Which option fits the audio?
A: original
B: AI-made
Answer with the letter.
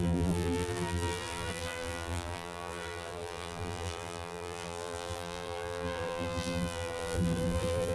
B